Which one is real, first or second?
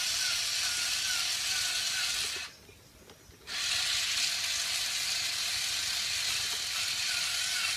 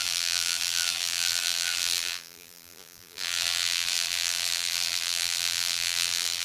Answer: first